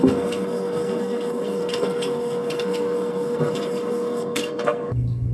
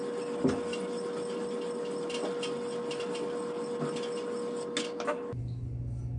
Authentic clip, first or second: second